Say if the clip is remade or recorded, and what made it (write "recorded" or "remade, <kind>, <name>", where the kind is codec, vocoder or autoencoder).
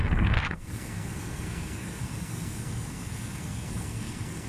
remade, codec, SNAC